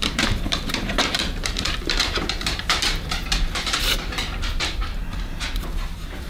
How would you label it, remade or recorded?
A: remade